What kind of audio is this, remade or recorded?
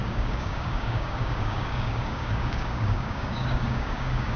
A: remade